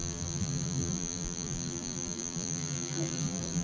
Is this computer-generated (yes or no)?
yes